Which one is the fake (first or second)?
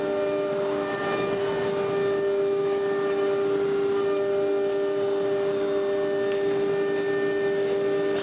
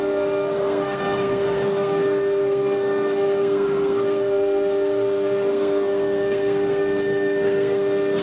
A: second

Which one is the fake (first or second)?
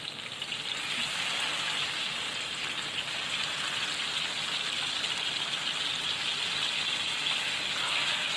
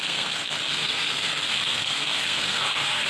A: second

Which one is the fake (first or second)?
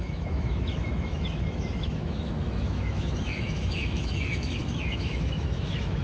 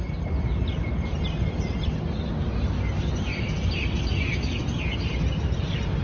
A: first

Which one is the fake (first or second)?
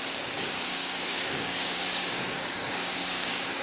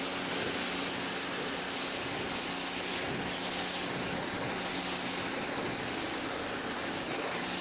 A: first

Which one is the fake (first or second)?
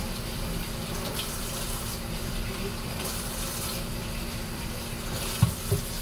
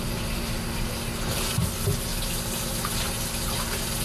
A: first